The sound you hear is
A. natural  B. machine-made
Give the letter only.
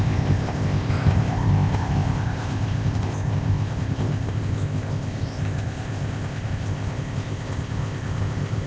B